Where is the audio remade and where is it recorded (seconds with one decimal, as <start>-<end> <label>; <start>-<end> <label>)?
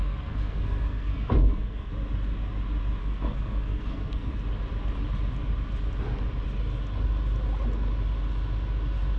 0.0-1.9 remade; 1.9-3.0 recorded; 3.0-4.3 remade; 4.3-9.2 recorded